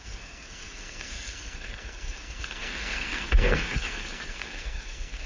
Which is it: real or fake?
fake